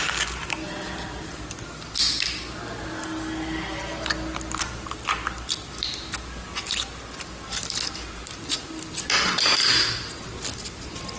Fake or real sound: real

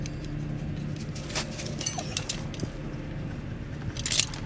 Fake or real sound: real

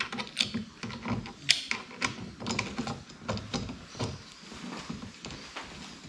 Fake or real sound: real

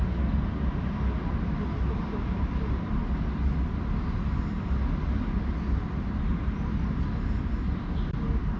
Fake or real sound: real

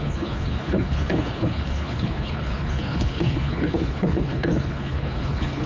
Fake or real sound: fake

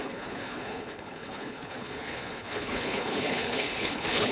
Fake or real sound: fake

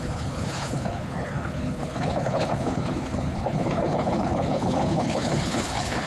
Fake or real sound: fake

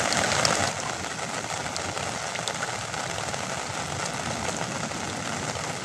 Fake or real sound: real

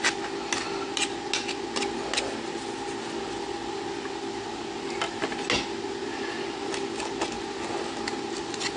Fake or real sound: real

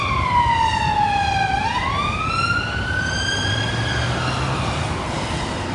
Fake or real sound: real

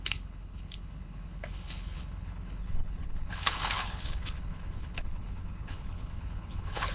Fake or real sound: fake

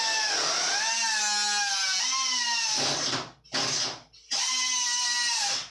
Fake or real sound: real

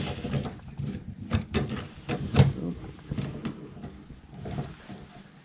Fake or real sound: real